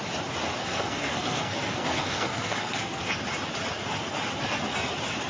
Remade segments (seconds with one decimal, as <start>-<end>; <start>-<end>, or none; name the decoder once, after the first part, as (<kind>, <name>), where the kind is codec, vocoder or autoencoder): 0.6-3.2 (codec, SNAC)